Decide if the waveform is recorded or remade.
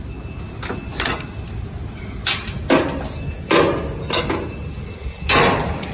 recorded